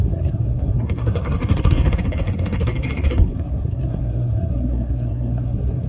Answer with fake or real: fake